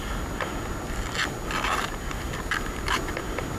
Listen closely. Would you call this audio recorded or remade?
recorded